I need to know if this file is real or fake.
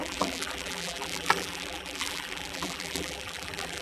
fake